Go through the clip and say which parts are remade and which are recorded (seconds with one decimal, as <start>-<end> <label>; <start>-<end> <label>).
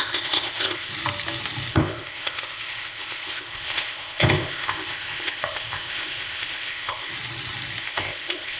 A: 0.0-0.9 remade; 0.9-1.7 recorded; 1.7-7.1 remade; 7.1-7.8 recorded; 7.8-8.6 remade